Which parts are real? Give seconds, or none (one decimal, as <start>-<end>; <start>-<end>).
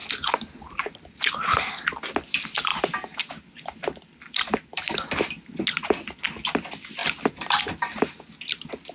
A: 0.0-8.9